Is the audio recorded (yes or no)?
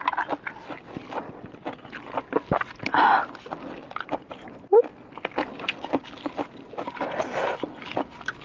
yes